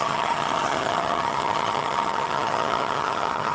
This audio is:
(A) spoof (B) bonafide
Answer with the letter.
A